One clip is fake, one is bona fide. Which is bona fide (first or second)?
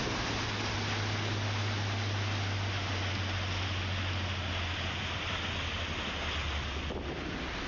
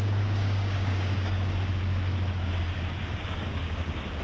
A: first